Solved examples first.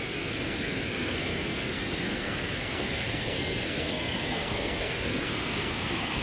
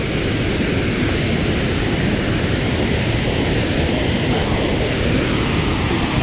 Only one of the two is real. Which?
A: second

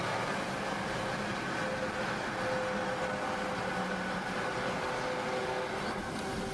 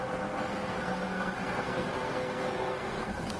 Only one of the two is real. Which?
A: first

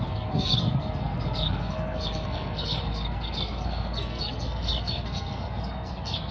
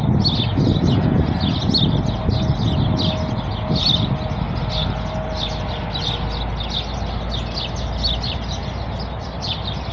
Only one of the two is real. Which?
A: second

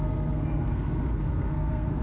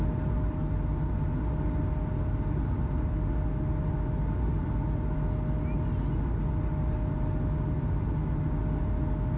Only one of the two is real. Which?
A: second